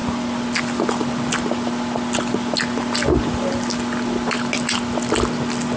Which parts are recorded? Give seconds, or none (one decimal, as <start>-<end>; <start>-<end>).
0.0-5.8